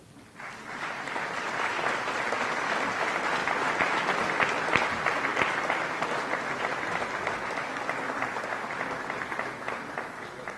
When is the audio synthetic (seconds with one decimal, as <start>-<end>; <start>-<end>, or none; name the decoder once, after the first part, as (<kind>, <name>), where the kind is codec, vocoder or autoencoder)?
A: 3.4-4.0 (vocoder, BigVGAN v2); 5.3-6.2

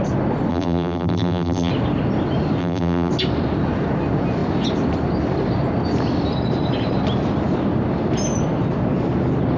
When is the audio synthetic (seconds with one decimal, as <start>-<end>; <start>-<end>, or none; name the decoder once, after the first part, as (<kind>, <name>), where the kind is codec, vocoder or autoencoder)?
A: 0.5-1.7 (vocoder, BigVGAN v2); 2.6-3.1

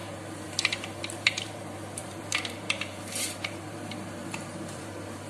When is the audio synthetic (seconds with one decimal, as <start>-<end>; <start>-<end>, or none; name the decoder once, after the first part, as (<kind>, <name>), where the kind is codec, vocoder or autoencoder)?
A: 0.0-1.6 (vocoder, BigVGAN v2); 2.0-5.3